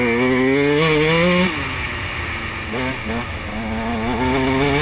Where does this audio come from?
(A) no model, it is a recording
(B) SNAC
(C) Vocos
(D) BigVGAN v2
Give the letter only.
A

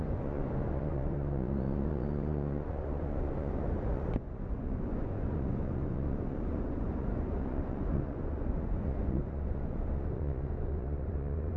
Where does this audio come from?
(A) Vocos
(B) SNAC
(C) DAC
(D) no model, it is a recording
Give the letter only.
A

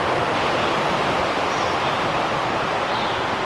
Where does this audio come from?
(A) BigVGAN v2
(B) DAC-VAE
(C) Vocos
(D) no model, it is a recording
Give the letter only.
D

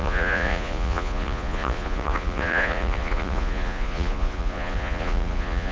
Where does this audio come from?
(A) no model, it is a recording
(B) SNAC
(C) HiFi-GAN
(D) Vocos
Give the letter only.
D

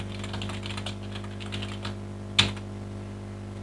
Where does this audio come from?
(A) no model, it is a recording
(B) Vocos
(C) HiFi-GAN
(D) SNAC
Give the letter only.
A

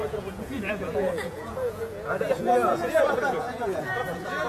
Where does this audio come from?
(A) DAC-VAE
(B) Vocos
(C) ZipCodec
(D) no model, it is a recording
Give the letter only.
B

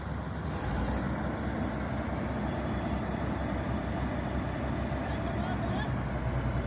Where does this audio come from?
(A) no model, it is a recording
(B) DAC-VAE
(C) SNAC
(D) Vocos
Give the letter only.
A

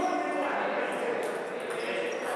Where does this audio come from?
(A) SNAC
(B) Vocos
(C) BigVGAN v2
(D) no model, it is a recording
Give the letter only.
D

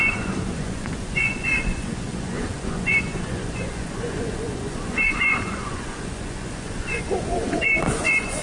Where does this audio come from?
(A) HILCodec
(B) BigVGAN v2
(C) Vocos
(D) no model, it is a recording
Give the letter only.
C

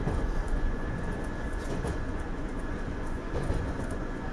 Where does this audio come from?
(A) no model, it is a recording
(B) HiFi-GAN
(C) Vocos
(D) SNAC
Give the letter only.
C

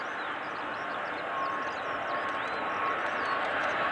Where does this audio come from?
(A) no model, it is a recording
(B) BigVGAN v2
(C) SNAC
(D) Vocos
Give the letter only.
A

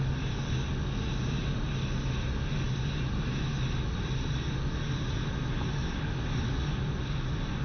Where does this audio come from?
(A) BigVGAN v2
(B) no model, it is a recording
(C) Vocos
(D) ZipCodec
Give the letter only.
B